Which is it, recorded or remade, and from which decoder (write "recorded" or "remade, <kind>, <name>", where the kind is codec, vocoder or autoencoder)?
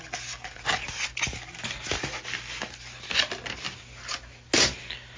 recorded